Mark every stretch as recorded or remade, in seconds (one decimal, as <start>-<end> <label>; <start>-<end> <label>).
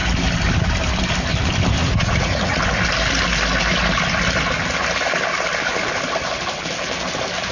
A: 0.0-1.8 recorded; 1.8-2.6 remade; 2.6-7.5 recorded